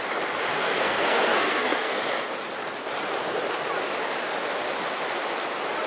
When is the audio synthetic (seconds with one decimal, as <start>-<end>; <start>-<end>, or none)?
0.5-2.0